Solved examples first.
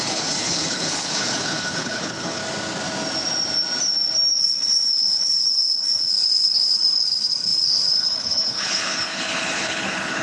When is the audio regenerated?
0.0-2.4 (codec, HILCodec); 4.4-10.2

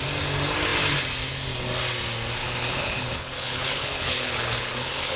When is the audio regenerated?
2.4-5.2 (codec, HILCodec)